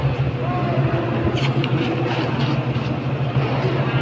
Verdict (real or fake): real